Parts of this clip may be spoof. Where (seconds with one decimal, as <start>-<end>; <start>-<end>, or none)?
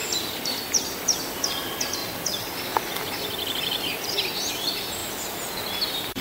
0.0-0.7